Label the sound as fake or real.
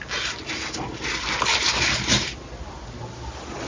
real